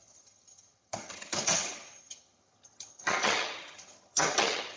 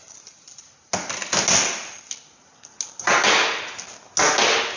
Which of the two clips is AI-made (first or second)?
first